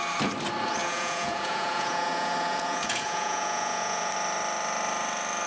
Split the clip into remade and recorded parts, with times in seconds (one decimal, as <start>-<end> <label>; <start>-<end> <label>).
0.0-0.8 recorded; 0.8-4.1 remade; 4.1-5.5 recorded